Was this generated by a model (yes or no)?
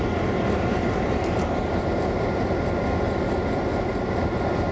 no